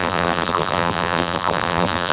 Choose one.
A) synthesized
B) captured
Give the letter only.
A